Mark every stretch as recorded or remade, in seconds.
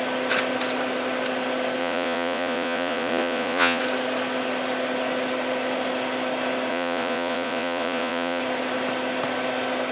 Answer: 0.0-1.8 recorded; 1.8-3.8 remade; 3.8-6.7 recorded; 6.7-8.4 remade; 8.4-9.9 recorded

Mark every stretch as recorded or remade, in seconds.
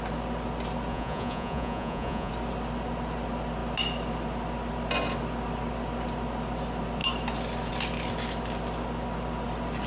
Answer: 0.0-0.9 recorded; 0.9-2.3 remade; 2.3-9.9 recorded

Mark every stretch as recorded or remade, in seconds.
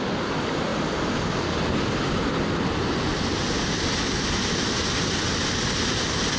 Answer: 0.0-6.4 recorded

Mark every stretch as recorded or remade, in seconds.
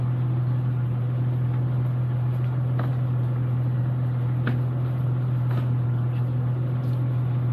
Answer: 0.0-7.5 recorded